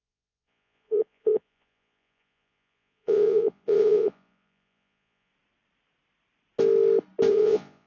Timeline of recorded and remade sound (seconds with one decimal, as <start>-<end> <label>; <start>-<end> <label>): 0.0-5.3 remade; 5.3-7.3 recorded; 7.3-7.9 remade